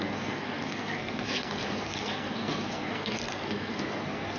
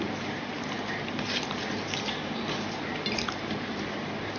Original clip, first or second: second